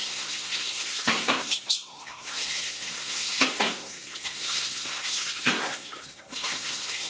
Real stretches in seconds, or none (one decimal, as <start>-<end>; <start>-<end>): none